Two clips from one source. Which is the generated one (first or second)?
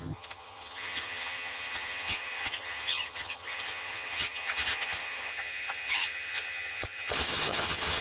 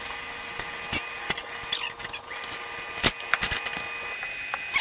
first